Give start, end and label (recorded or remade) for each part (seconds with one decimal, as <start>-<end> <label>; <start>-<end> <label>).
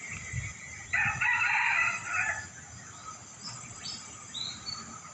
0.0-5.1 recorded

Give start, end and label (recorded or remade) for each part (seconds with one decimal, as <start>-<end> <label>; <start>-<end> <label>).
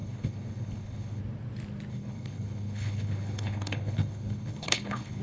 0.0-1.2 remade; 1.2-1.9 recorded; 1.9-5.2 remade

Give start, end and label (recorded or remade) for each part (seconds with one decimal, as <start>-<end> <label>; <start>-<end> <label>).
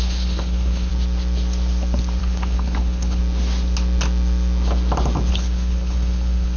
0.0-0.9 remade; 0.9-2.2 recorded; 2.2-3.2 remade; 3.2-5.3 recorded; 5.3-6.6 remade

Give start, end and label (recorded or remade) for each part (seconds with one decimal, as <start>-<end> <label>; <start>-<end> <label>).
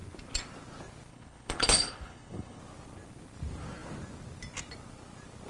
0.0-1.1 recorded; 1.1-2.6 remade; 2.6-5.5 recorded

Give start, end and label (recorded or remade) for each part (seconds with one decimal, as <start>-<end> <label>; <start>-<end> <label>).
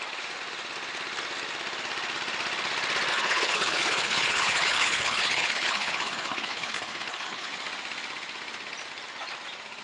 0.0-3.1 recorded; 3.1-7.5 remade; 7.5-9.8 recorded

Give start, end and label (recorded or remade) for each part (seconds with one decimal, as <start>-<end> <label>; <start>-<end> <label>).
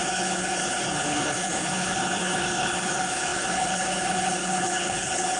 0.0-5.4 remade